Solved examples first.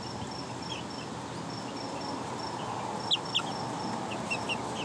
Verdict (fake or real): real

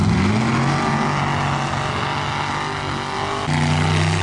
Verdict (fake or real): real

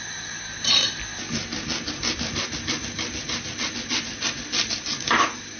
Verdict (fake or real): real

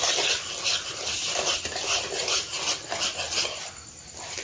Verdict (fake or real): real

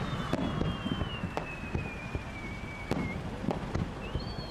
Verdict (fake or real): real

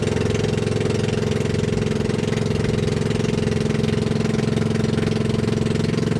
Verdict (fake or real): real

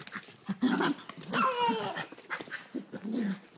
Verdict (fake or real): real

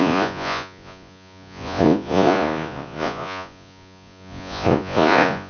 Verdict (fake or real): fake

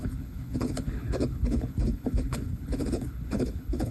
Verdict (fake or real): fake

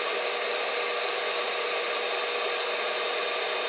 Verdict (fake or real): real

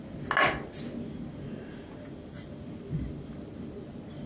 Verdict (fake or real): real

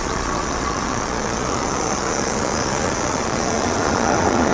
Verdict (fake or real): fake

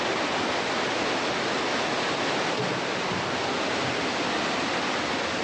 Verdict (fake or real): real